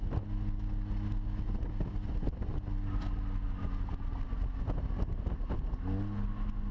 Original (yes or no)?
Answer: yes